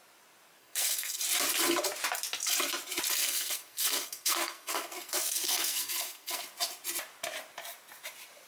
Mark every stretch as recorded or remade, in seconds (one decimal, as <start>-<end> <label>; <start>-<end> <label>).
0.0-0.6 recorded; 0.6-1.2 remade; 1.2-3.2 recorded; 3.2-6.4 remade; 6.4-8.5 recorded